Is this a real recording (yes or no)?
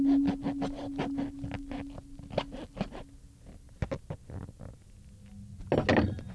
yes